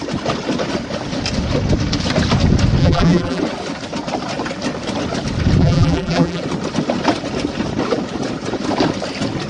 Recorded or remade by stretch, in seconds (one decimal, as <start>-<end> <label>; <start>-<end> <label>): 0.0-2.8 recorded; 2.8-3.4 remade; 3.4-5.6 recorded; 5.6-6.4 remade; 6.4-9.5 recorded